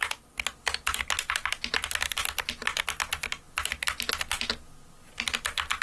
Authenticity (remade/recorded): recorded